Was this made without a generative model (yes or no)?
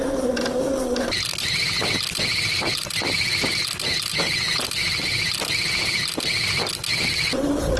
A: yes